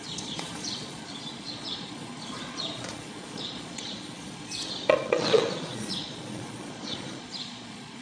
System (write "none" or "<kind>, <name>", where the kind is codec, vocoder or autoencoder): vocoder, Vocos